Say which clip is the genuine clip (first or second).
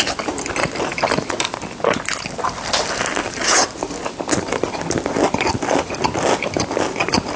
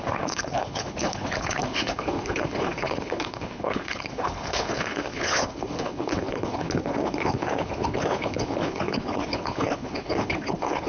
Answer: first